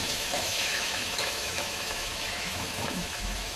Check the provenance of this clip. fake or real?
fake